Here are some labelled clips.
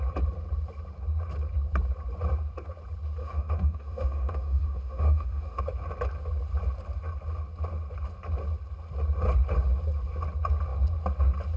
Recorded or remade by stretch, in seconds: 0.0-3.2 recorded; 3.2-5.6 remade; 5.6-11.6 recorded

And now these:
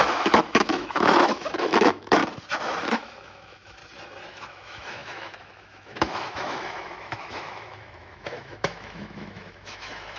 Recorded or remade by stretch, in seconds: 0.0-2.2 remade; 2.2-2.8 recorded; 2.8-3.8 remade; 3.8-4.3 recorded; 4.3-10.2 remade

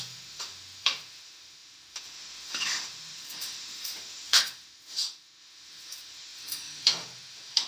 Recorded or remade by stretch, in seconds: 0.0-7.7 remade